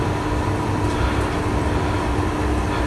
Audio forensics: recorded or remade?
remade